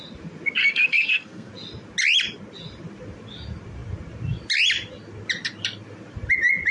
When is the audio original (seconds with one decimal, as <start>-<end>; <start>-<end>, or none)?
0.0-0.6; 1.5-6.7